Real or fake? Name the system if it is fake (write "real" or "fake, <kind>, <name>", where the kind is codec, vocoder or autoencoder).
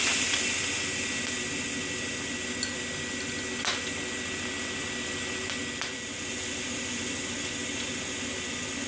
real